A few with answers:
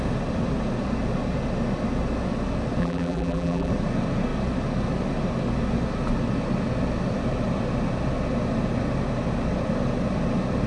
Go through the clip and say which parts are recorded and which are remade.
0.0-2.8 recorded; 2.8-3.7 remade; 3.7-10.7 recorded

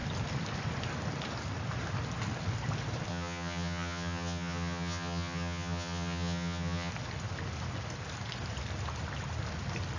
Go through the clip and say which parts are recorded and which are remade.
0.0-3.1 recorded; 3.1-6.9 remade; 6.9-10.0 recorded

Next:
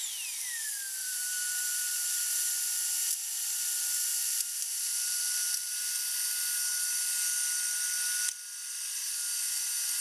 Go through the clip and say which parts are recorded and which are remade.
0.0-1.0 recorded; 1.0-2.2 remade; 2.2-4.1 recorded; 4.1-5.9 remade; 5.9-10.0 recorded

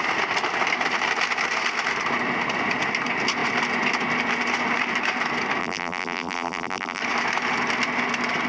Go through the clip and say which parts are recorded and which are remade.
0.0-5.6 recorded; 5.6-7.0 remade; 7.0-8.5 recorded

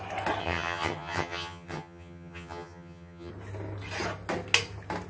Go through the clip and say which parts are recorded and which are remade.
0.0-0.4 recorded; 0.4-3.3 remade; 3.3-5.1 recorded

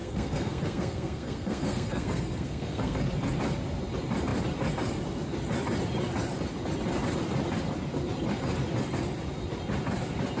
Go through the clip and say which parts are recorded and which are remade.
0.0-3.0 remade; 3.0-10.4 recorded